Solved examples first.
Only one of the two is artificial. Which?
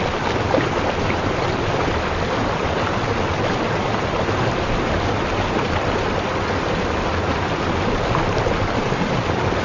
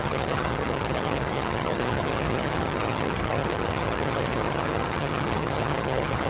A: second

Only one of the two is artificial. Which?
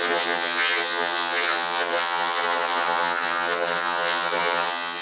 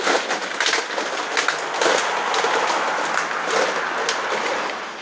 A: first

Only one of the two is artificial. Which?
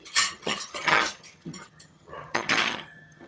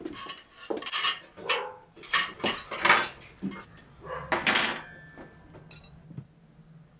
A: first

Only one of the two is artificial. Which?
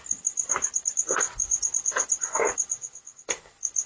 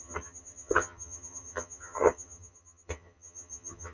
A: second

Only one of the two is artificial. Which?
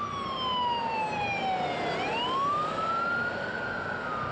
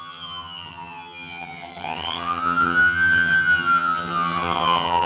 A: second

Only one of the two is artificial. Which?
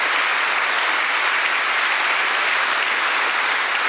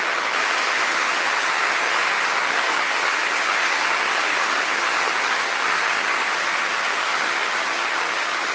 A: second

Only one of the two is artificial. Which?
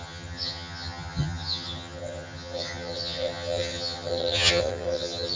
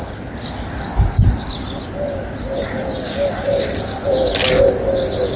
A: first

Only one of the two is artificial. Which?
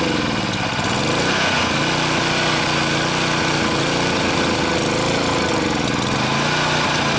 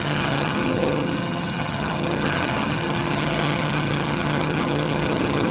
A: second